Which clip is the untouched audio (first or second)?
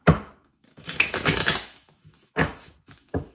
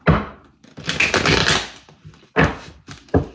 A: second